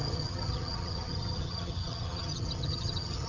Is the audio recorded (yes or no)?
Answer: no